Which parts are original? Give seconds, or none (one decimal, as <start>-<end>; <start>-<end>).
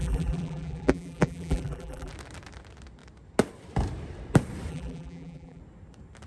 2.1-4.7; 5.6-6.3